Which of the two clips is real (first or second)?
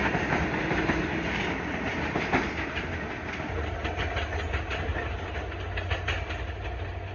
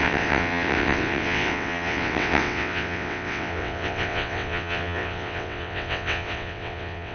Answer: first